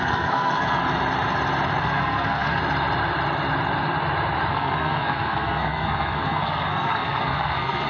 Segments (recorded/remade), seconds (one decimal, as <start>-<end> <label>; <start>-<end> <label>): 0.0-0.8 remade; 0.8-1.8 recorded; 1.8-2.6 remade; 2.6-4.5 recorded; 4.5-7.9 remade